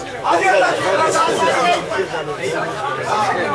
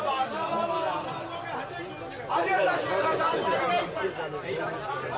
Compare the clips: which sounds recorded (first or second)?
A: second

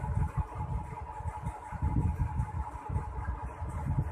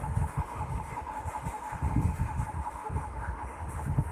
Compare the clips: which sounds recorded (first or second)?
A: first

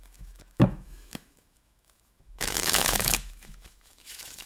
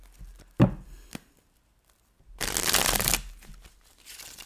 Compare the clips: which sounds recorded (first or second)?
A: second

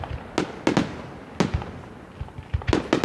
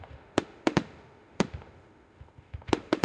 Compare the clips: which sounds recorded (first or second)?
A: first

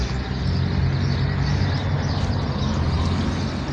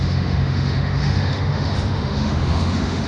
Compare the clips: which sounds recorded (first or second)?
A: first